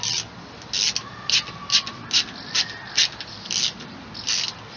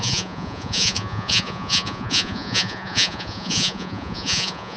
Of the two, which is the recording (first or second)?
first